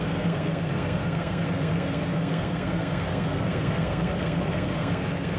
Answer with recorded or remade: remade